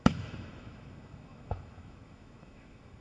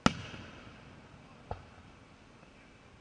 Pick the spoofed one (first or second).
first